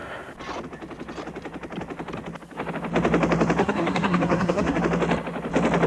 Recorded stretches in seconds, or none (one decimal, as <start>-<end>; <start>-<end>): 0.0-3.6; 4.8-5.9